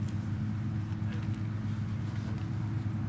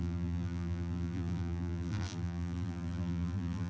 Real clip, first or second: first